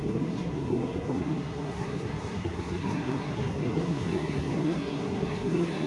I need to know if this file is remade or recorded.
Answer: remade